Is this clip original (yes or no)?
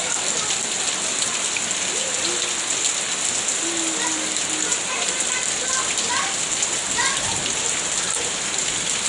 yes